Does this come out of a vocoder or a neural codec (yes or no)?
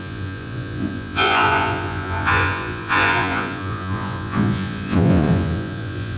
yes